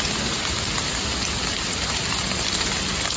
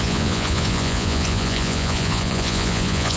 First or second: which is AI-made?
second